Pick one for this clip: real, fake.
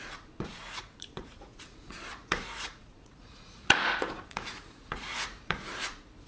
fake